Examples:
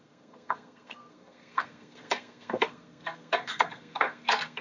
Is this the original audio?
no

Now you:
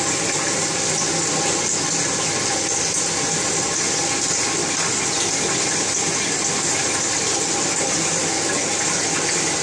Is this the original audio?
yes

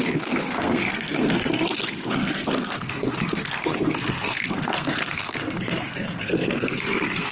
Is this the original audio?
no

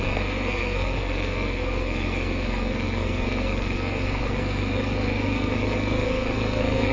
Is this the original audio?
no